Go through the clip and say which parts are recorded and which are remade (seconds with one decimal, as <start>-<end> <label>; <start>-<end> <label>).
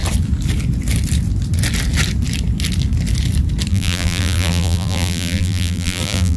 0.0-3.7 recorded; 3.7-6.4 remade